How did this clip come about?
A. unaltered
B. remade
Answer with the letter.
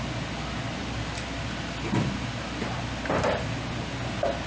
A